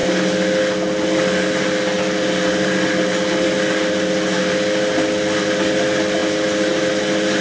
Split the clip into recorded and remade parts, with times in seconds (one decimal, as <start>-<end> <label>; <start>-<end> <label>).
0.0-7.4 recorded